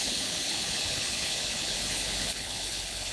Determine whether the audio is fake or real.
fake